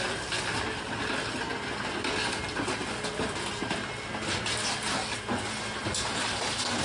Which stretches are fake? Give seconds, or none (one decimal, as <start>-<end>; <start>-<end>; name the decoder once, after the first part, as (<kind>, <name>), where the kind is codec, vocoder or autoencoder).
none